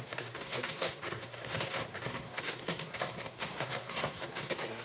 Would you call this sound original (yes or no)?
no